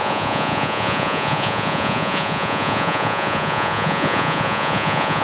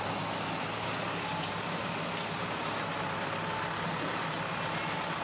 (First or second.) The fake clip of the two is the first